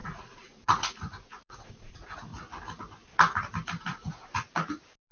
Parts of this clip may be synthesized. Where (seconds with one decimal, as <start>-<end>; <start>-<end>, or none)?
0.0-2.3; 3.8-4.3